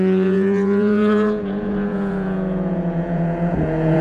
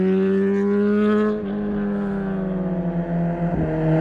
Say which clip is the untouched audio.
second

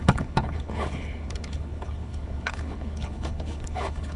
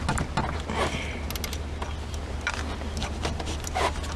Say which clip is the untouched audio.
second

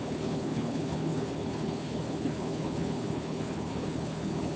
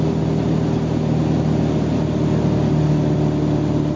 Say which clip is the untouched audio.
second